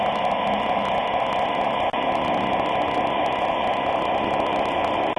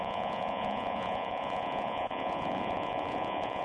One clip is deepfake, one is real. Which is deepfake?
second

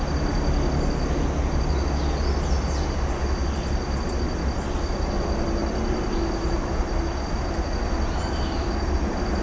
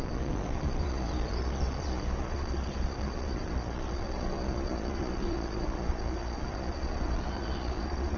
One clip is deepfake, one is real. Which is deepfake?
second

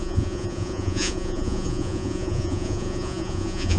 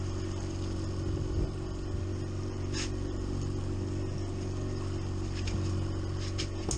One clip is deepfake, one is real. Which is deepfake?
first